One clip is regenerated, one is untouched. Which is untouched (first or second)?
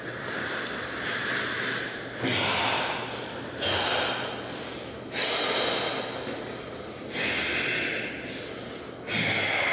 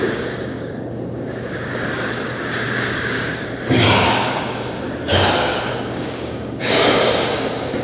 first